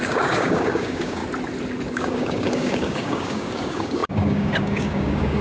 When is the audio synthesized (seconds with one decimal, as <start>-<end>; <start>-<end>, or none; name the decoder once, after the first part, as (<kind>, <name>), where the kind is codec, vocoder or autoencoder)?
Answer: 0.0-1.2 (codec, DAC); 1.9-5.4